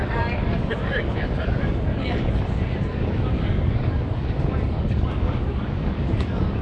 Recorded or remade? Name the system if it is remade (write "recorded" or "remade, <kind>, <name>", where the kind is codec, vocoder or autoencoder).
remade, codec, DAC